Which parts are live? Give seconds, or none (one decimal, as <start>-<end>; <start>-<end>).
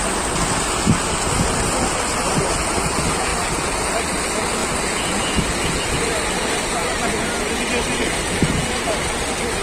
0.0-9.6